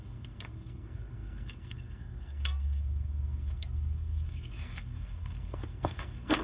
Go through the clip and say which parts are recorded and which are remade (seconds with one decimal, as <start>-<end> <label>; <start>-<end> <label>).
0.0-6.4 remade